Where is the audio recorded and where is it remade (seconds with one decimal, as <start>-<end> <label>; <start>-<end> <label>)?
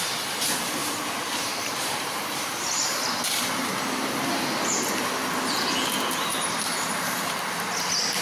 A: 0.0-0.8 recorded; 0.8-2.1 remade; 2.1-8.2 recorded